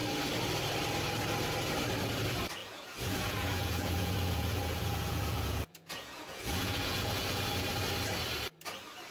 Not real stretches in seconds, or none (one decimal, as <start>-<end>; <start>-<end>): 2.6-7.5

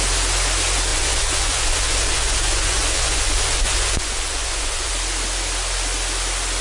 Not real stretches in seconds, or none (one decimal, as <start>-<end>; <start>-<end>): 0.9-4.9